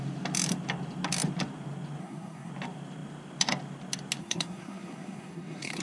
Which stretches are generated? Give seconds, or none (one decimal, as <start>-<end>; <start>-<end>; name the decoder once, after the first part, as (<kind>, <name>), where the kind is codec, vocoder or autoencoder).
2.0-2.5 (codec, SNAC); 4.2-5.8